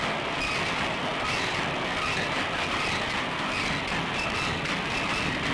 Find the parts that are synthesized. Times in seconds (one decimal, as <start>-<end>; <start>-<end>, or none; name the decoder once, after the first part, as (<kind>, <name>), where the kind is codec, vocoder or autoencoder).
none